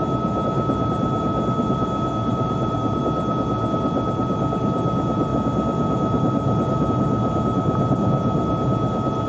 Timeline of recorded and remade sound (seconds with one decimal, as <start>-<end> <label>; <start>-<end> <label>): 0.0-2.3 recorded; 2.3-3.0 remade; 3.0-9.3 recorded